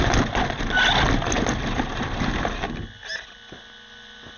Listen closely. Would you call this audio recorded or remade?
recorded